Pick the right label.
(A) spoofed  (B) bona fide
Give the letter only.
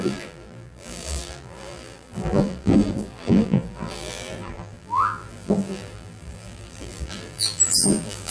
A